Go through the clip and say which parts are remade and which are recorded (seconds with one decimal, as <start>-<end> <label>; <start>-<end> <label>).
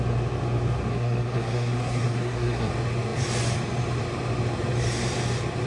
0.0-0.9 recorded; 0.9-2.7 remade; 2.7-5.7 recorded